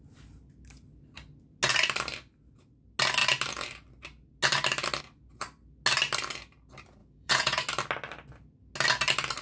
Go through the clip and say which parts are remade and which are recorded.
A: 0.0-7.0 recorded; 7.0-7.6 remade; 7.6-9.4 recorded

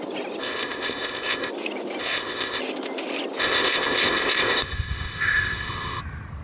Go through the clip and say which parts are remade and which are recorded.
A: 0.0-0.4 recorded; 0.4-1.5 remade; 1.5-2.0 recorded; 2.0-2.6 remade; 2.6-3.4 recorded; 3.4-6.0 remade; 6.0-6.4 recorded

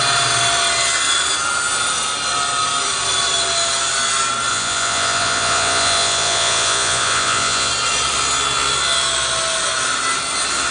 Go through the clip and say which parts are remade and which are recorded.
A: 0.0-4.5 recorded; 4.5-7.7 remade; 7.7-10.7 recorded